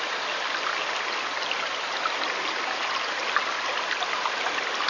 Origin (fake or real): real